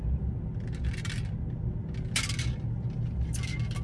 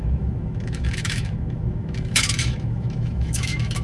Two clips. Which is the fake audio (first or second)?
second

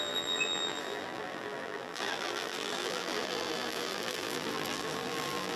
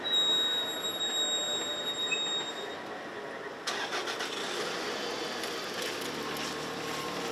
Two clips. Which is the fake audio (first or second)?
first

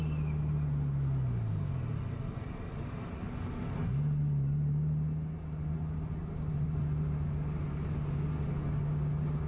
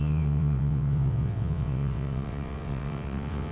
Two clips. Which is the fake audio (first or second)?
second